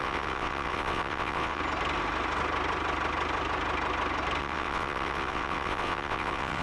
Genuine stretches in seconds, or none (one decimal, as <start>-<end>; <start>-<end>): 1.6-4.4